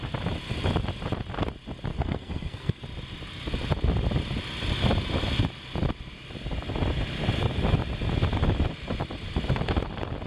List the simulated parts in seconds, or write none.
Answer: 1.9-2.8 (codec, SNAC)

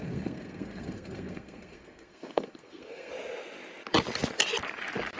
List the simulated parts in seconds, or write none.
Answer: 0.0-3.1 (codec, SNAC)

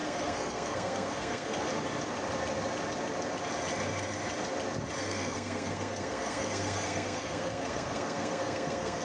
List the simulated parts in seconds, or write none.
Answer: 0.0-1.7 (codec, SNAC); 5.0-9.0

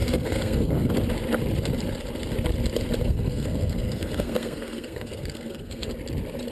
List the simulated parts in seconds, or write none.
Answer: 0.0-0.9 (codec, SNAC); 3.0-5.9

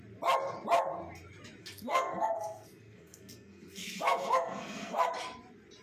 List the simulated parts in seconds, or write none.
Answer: 1.6-5.1 (codec, SNAC)